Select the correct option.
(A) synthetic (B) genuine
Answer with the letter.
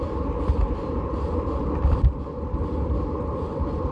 B